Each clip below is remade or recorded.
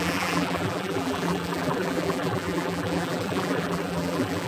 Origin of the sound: remade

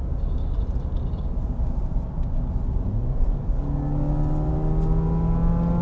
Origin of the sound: recorded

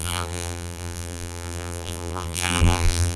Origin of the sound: remade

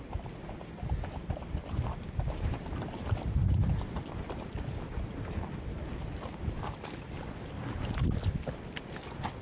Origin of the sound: recorded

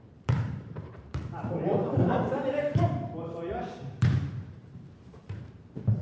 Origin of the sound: remade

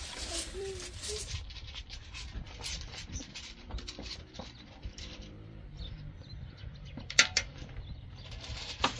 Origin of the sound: remade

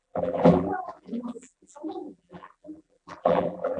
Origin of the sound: remade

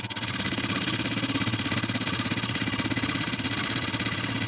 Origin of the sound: recorded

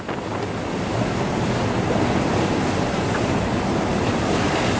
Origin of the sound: recorded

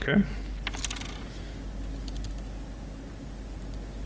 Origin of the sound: recorded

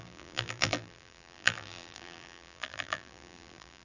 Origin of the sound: remade